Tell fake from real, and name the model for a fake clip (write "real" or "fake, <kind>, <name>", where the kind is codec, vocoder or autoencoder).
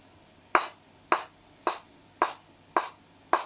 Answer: real